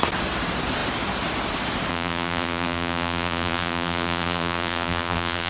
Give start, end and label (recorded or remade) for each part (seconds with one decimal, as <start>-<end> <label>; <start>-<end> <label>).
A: 0.0-1.9 recorded; 1.9-5.5 remade